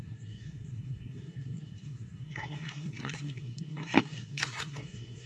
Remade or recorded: remade